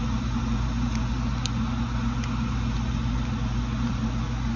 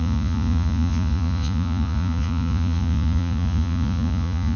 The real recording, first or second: first